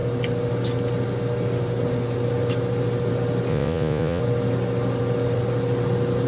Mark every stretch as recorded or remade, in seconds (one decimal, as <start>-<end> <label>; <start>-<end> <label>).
0.0-3.5 recorded; 3.5-4.2 remade; 4.2-6.3 recorded